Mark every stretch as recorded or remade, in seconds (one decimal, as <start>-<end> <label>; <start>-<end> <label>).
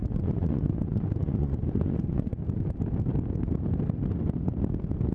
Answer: 0.0-2.4 remade; 2.4-5.1 recorded